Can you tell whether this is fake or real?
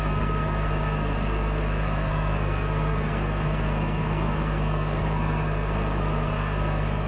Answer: fake